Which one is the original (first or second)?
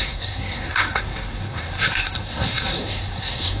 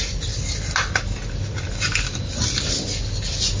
second